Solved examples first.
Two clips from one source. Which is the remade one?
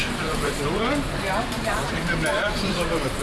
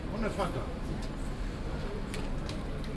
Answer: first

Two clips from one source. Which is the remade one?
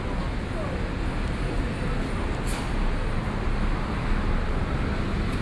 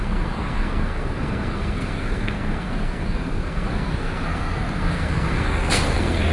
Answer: second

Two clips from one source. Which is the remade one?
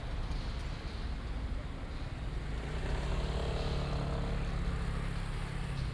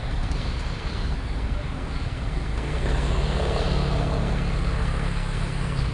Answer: second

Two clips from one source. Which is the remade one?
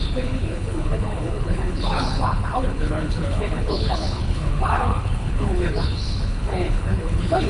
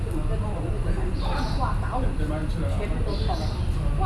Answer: first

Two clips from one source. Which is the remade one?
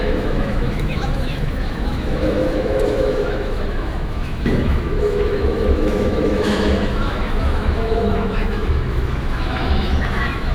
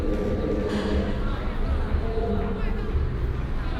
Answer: first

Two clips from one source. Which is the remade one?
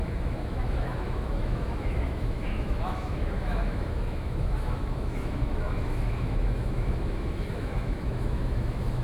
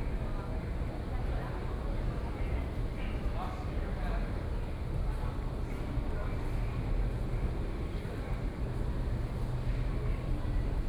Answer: first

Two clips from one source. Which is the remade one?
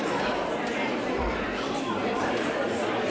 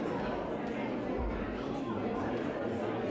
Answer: first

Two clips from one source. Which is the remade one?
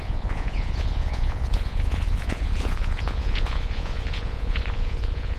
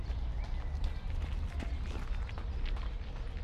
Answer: first